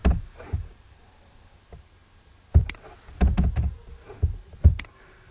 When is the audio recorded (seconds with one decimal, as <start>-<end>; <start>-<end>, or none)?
1.6-5.3